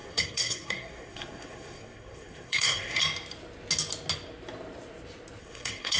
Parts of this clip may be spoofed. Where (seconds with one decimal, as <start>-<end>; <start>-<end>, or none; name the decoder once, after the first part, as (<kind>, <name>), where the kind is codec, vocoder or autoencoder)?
0.0-3.0 (codec, SNAC); 5.4-6.0